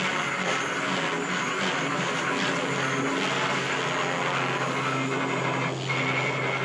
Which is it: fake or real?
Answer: real